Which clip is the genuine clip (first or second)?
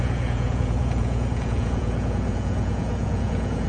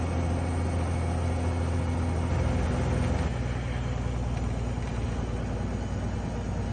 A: second